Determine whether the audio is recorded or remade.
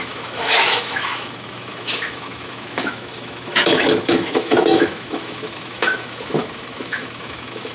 remade